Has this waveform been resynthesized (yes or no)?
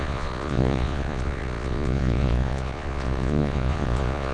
yes